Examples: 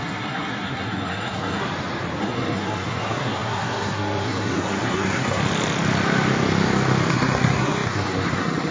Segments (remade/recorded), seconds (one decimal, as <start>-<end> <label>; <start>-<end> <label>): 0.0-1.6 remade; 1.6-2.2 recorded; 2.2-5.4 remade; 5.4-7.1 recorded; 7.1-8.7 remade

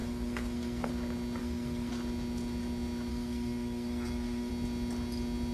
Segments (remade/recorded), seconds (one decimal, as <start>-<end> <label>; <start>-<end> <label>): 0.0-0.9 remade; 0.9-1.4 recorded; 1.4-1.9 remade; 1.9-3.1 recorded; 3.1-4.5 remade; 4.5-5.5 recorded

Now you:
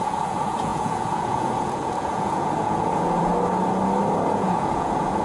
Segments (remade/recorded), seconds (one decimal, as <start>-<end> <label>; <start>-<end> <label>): 0.0-3.3 remade; 3.3-4.3 recorded; 4.3-5.2 remade

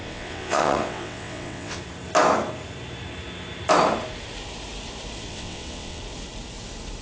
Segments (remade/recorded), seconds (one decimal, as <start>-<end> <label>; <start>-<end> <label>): 0.0-1.8 remade; 1.8-5.3 recorded; 5.3-6.0 remade; 6.0-7.0 recorded

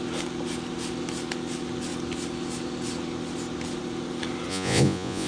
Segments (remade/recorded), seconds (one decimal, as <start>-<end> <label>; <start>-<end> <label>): 0.0-4.5 recorded; 4.5-5.3 remade

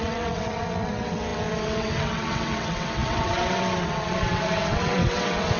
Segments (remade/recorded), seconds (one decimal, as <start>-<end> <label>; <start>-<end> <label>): 0.0-5.6 remade